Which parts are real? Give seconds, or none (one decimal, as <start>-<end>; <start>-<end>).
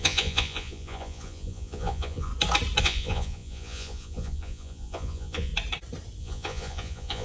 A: 2.3-2.8; 5.5-6.2